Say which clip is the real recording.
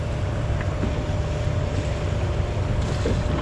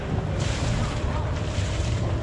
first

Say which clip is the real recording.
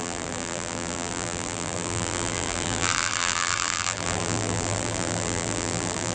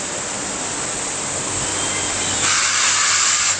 second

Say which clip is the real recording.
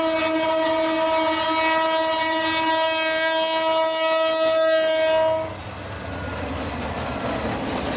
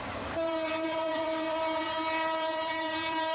first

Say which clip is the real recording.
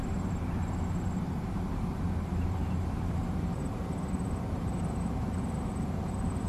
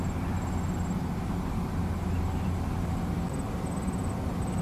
second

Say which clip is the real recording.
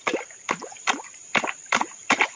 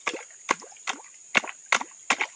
second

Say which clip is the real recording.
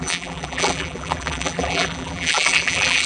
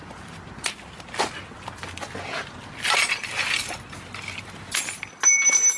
second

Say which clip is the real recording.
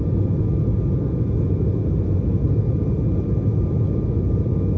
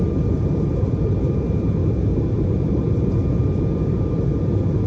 first